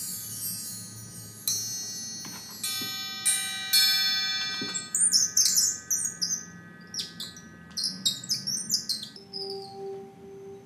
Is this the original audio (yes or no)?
yes